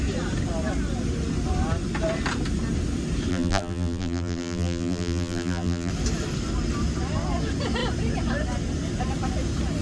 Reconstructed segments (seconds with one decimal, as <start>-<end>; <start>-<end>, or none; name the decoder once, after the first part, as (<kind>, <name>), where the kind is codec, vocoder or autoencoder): 3.3-5.9 (vocoder, BigVGAN v2)